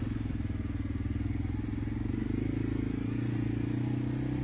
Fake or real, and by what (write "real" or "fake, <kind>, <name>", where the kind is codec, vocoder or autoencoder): real